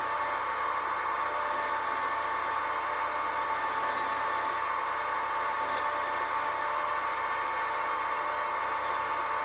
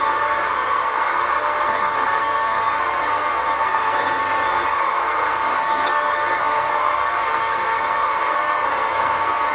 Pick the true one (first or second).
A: first